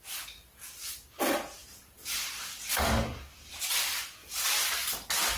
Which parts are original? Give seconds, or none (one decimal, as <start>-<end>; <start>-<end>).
0.0-1.6; 3.6-4.2; 4.7-5.4